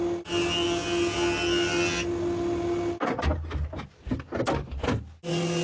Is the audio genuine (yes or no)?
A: yes